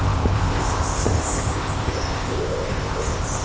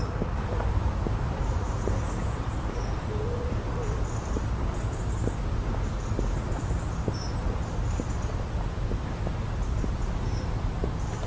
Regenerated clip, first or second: first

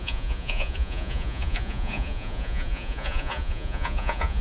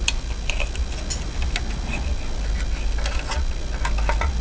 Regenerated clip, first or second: first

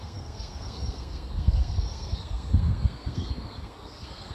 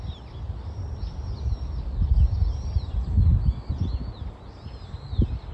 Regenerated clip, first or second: first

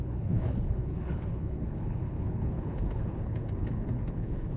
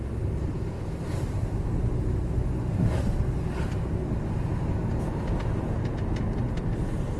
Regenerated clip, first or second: first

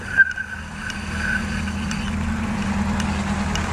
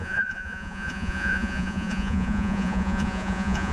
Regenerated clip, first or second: second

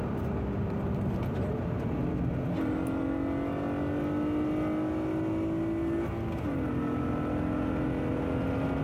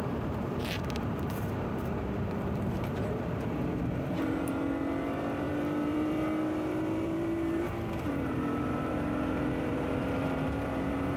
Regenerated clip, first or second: second